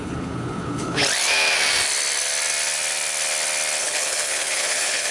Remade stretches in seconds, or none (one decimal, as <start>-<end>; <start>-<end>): 0.0-1.0; 3.8-5.1